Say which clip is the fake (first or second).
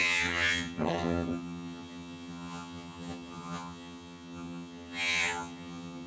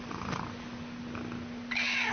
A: first